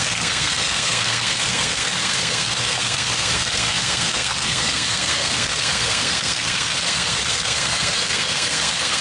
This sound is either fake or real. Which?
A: fake